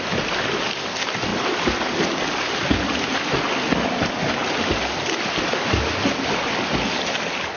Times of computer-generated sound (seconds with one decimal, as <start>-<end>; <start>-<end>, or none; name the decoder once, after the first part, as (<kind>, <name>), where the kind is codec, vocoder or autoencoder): none

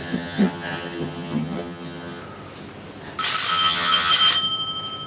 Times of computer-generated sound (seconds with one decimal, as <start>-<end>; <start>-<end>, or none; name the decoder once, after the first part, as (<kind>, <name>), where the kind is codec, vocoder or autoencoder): 0.0-2.2 (vocoder, HiFi-GAN); 3.5-4.1

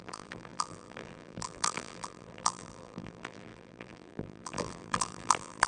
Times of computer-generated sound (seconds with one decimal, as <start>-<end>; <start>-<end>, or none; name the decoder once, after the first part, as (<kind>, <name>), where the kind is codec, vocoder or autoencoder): 0.0-5.7 (vocoder, BigVGAN v2)

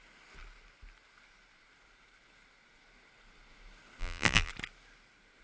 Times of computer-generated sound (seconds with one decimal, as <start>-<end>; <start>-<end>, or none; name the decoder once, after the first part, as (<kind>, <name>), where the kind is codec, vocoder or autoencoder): 4.0-4.5 (vocoder, BigVGAN v2)

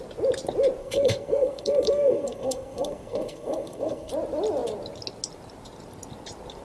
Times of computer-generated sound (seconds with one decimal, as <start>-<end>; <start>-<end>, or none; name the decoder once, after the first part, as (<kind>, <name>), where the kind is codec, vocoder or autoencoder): 0.8-4.1 (codec, SNAC)

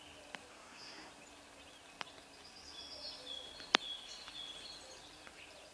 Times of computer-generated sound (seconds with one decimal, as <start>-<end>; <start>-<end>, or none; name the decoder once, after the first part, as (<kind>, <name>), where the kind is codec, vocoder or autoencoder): 0.5-1.1 (codec, SNAC)

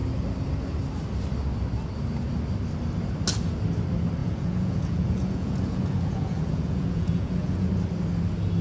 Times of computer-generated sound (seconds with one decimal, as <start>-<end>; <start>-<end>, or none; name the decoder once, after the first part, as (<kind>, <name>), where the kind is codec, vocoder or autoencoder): 4.2-7.7 (vocoder, Vocos)

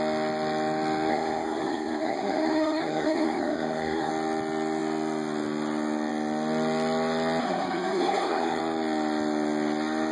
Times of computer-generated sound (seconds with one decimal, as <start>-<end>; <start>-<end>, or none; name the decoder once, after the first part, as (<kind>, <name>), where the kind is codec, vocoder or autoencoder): 1.1-4.1 (codec, SNAC); 7.4-8.6